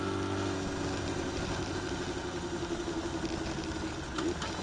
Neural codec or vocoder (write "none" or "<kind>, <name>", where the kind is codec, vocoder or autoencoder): none